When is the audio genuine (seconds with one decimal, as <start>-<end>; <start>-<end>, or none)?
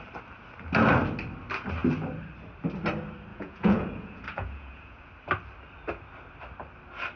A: 0.0-3.3; 5.1-7.2